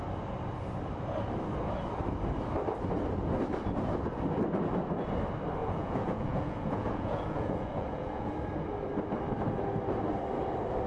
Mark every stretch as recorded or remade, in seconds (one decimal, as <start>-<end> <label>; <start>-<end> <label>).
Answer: 0.0-5.6 recorded; 5.6-8.3 remade; 8.3-10.9 recorded